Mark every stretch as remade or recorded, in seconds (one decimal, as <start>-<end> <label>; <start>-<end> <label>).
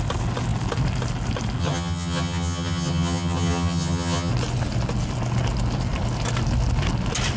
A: 0.0-1.6 recorded; 1.6-4.3 remade; 4.3-7.4 recorded